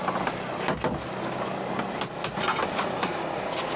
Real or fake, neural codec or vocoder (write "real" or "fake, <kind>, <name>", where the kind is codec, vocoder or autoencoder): real